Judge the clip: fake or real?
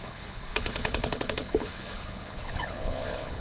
fake